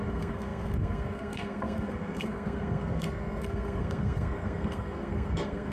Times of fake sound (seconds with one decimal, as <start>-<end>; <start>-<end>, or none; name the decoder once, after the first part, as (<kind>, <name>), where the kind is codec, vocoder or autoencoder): 0.0-5.7 (codec, SNAC)

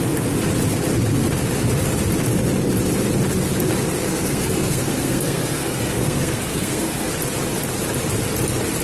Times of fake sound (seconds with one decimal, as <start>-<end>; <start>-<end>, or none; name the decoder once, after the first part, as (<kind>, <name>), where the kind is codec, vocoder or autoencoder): 4.0-7.1 (codec, SNAC)

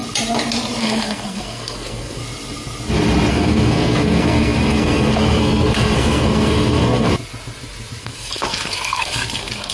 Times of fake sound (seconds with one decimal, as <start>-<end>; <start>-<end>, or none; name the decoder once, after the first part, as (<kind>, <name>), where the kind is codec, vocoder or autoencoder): 0.8-2.2 (codec, SNAC); 3.3-7.1; 8.0-9.7

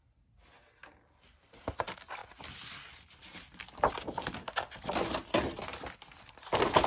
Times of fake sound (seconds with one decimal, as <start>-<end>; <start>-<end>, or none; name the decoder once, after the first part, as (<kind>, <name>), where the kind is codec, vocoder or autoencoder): none

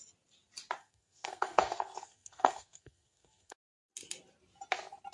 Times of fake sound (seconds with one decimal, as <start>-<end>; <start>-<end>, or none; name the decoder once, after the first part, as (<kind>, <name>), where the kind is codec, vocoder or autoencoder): 0.8-3.9 (codec, SNAC)

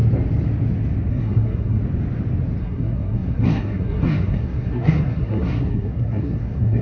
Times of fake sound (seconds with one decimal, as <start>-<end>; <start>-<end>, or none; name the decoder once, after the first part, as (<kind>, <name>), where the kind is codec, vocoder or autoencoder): 1.1-1.8 (codec, SNAC); 2.6-6.8

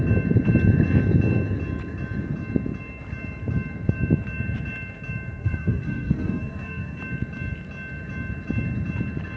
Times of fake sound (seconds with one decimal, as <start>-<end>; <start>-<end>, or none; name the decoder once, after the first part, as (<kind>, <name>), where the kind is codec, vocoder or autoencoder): 5.4-7.0 (codec, SNAC)